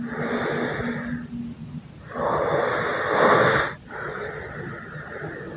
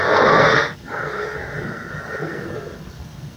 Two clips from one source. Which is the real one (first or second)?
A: first